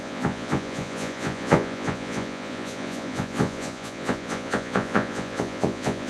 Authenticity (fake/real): fake